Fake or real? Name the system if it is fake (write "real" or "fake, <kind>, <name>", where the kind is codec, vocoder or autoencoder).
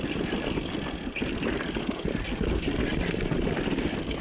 real